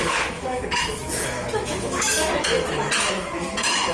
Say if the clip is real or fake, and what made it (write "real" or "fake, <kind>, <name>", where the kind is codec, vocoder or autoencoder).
fake, autoencoder, DAC-VAE